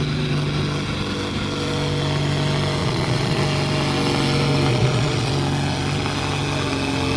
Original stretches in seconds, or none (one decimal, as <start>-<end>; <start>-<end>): 0.0-2.8; 3.4-4.7; 5.3-7.2